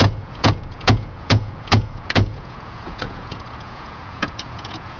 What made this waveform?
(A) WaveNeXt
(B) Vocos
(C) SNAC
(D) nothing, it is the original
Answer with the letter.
B